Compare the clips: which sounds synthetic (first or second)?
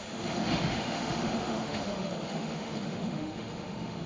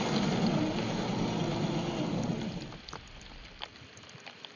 first